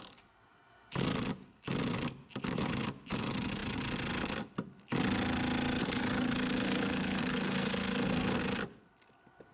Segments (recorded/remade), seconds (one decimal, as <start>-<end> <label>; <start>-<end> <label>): 0.0-5.8 recorded; 5.8-8.4 remade; 8.4-9.5 recorded